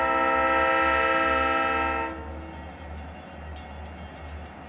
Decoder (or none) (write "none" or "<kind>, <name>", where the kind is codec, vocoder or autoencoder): none